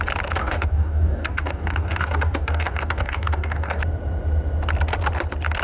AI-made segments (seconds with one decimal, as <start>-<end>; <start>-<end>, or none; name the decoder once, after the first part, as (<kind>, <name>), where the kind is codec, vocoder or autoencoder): 0.4-3.8 (codec, DAC)